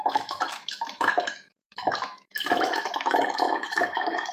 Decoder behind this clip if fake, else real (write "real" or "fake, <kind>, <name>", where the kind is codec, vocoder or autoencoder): fake, autoencoder, DAC-VAE